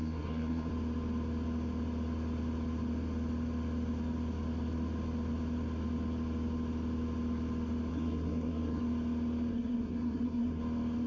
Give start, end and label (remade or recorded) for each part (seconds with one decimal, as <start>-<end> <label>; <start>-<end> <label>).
0.0-0.7 remade; 0.7-7.9 recorded; 7.9-8.8 remade; 8.8-9.5 recorded; 9.5-10.6 remade; 10.6-11.1 recorded